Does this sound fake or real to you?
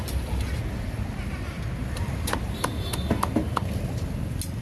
real